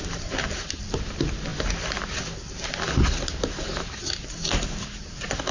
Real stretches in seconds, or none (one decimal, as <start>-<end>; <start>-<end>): 0.0-5.5